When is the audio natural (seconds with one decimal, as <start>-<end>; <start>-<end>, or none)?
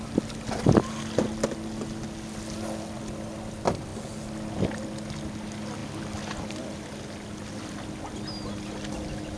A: 0.0-9.4